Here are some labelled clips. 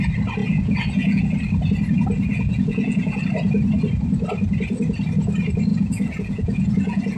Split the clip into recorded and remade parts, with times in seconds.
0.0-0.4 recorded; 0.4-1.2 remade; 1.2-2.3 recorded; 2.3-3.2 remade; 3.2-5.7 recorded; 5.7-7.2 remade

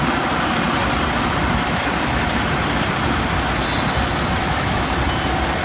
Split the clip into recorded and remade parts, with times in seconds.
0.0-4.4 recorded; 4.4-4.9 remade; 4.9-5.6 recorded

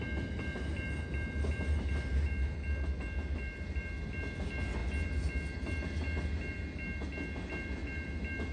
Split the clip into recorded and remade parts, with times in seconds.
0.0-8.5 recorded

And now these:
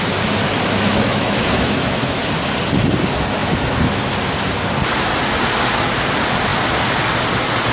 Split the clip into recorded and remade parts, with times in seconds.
0.0-0.9 recorded; 0.9-2.2 remade; 2.2-7.7 recorded

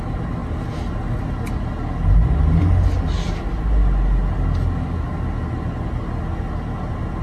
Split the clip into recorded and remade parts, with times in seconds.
0.0-7.2 recorded